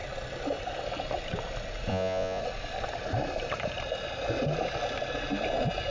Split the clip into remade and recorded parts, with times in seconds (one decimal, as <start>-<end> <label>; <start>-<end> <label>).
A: 0.0-1.9 recorded; 1.9-2.4 remade; 2.4-5.9 recorded